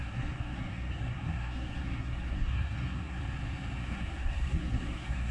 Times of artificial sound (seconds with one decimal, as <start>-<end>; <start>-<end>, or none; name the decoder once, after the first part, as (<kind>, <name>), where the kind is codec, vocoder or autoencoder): 0.0-3.2 (codec, SNAC); 3.8-5.3